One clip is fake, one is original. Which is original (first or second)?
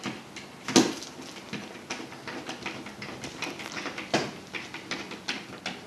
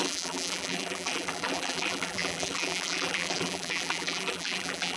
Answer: first